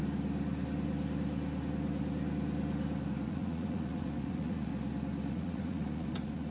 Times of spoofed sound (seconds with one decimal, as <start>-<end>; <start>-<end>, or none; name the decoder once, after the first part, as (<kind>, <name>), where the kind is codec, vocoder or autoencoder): 3.3-4.7 (vocoder, Vocos); 5.3-6.5